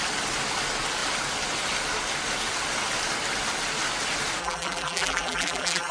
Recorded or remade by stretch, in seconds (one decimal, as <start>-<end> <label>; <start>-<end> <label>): 0.0-4.4 recorded; 4.4-5.9 remade